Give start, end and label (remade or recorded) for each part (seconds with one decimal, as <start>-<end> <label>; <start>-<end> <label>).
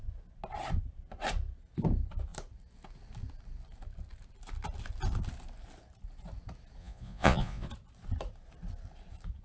0.0-6.8 recorded; 6.8-7.7 remade; 7.7-9.4 recorded